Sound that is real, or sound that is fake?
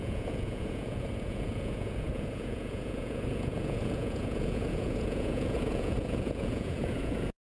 fake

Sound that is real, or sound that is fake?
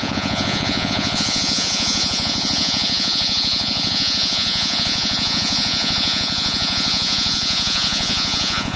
fake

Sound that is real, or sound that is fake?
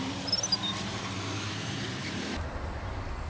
real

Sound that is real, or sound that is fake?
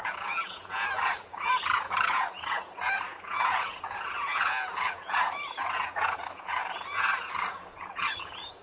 fake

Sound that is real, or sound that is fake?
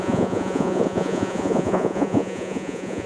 fake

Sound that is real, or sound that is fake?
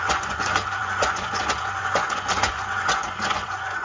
fake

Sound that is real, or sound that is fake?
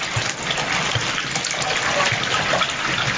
real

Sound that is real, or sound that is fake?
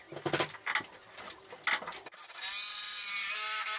real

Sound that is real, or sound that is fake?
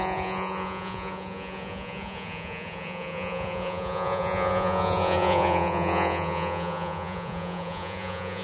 fake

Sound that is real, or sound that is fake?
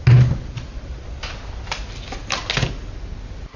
real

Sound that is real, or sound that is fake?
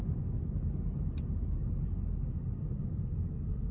real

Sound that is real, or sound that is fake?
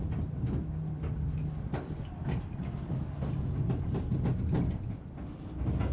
real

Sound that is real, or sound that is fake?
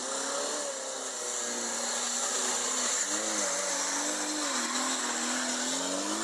real